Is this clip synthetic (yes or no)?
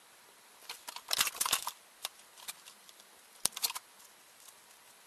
no